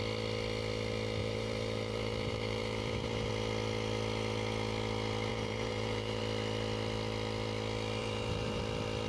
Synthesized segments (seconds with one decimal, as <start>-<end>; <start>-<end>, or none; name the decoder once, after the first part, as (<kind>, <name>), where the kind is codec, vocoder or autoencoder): 1.2-3.3 (vocoder, BigVGAN v2); 5.3-6.2; 8.0-8.6